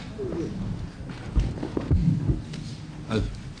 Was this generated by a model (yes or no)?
no